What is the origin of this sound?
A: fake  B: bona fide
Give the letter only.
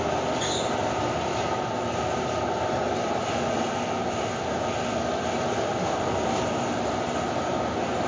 B